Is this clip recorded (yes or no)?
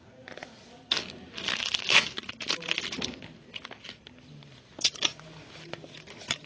yes